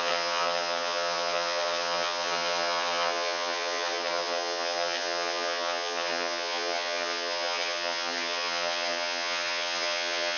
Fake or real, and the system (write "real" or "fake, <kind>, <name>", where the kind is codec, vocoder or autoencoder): fake, vocoder, HiFi-GAN